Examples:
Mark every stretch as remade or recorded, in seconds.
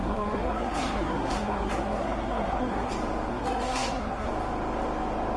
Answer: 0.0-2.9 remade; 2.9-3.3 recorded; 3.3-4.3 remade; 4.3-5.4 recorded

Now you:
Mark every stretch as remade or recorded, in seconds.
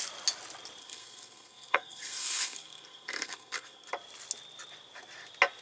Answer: 0.0-0.8 recorded; 0.8-3.9 remade; 3.9-5.6 recorded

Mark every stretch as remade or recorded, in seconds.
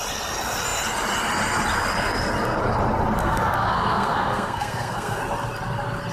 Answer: 0.0-3.2 recorded; 3.2-5.2 remade; 5.2-6.1 recorded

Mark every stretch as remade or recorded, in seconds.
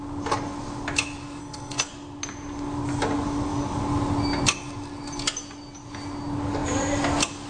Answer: 0.0-1.4 recorded; 1.4-1.9 remade; 1.9-7.5 recorded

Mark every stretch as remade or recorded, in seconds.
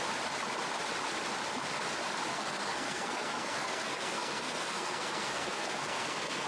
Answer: 0.0-2.3 recorded; 2.3-6.5 remade